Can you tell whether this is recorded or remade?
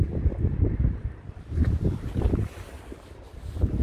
recorded